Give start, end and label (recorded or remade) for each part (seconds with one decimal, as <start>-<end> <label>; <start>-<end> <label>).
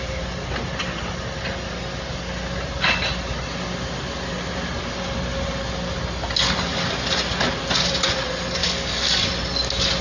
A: 0.0-8.6 recorded; 8.6-9.2 remade; 9.2-10.0 recorded